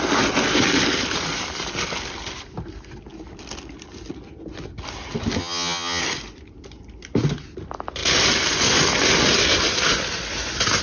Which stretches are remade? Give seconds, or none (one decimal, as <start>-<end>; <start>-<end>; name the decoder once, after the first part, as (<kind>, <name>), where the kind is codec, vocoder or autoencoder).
5.4-6.0 (vocoder, HiFi-GAN)

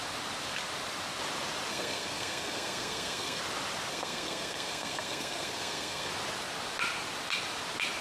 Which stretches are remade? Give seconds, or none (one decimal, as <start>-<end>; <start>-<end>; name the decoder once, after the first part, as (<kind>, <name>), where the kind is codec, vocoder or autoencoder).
1.7-3.4 (codec, SNAC); 3.9-6.1

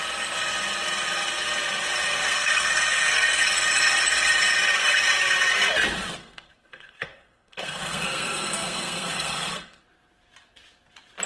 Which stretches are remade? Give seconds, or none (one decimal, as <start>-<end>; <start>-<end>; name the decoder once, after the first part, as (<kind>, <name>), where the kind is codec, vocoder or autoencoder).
2.2-3.4 (codec, SNAC); 6.2-9.8

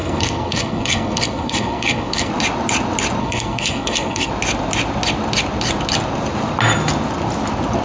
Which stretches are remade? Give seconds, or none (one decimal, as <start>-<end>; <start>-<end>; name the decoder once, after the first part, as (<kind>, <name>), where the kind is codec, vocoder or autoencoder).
0.0-2.3 (codec, SNAC); 3.2-4.3

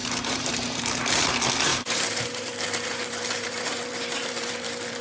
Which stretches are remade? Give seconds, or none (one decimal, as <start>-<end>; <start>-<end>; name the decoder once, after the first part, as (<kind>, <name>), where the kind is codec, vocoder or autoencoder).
0.0-1.1 (vocoder, BigVGAN v2); 1.7-5.0